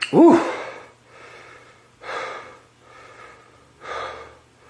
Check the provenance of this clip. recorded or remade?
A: recorded